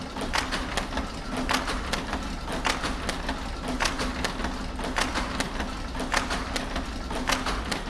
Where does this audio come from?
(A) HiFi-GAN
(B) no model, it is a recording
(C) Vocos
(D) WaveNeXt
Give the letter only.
B